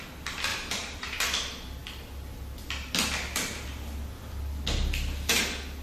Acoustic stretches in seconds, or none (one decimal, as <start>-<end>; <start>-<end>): 0.0-0.5; 1.2-5.8